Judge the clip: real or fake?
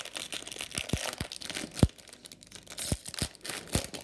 real